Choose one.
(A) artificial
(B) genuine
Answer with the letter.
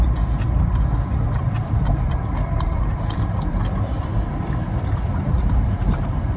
A